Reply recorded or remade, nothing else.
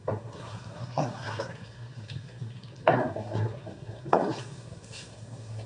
remade